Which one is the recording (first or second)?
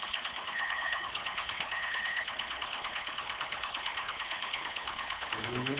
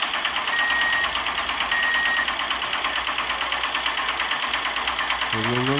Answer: second